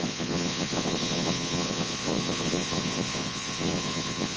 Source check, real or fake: fake